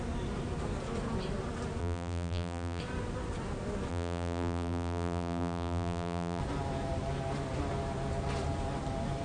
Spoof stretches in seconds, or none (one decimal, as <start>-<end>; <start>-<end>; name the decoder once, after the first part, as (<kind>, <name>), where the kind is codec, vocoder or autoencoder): 1.8-2.8 (vocoder, BigVGAN v2); 3.9-6.4